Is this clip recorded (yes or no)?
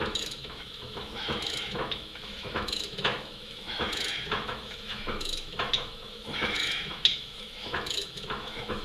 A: no